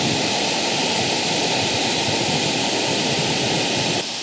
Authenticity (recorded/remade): recorded